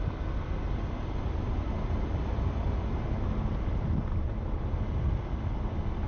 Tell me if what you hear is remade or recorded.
recorded